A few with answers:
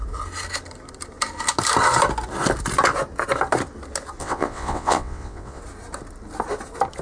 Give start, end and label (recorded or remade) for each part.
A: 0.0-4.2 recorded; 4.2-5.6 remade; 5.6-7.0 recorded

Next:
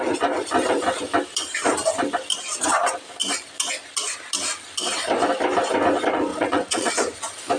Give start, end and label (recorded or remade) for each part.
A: 0.0-6.3 recorded; 6.3-6.9 remade; 6.9-7.6 recorded

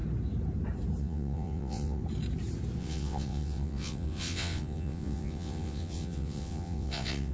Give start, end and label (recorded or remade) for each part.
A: 0.0-1.0 recorded; 1.0-2.0 remade; 2.0-2.8 recorded; 2.8-7.3 remade

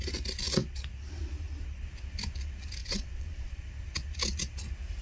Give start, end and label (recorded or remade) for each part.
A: 0.0-2.8 recorded; 2.8-3.6 remade; 3.6-5.0 recorded

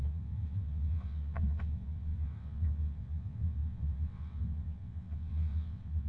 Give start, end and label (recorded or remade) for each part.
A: 0.0-6.1 remade

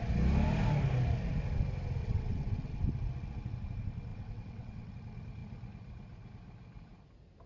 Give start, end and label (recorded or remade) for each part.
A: 0.0-2.0 recorded; 2.0-2.7 remade; 2.7-4.1 recorded; 4.1-4.9 remade; 4.9-7.5 recorded

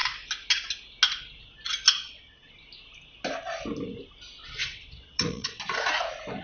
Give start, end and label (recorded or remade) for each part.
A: 0.0-2.0 recorded; 2.0-2.5 remade; 2.5-4.4 recorded; 4.4-5.6 remade; 5.6-6.4 recorded